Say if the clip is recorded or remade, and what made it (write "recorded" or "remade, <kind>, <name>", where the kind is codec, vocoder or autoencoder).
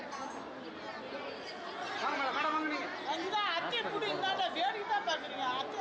recorded